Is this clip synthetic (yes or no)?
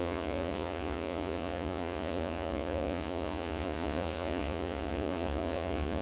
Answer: yes